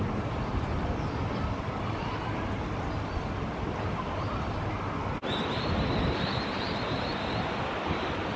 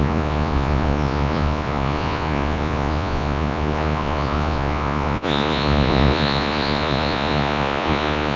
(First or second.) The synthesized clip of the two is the second